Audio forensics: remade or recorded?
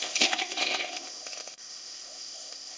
remade